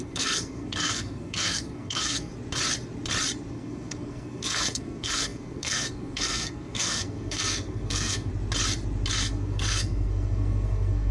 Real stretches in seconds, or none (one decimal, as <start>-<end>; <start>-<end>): 2.3-3.5; 8.3-9.1